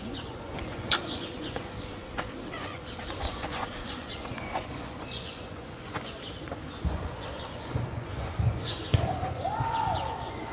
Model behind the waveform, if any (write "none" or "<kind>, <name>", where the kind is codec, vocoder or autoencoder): vocoder, Vocos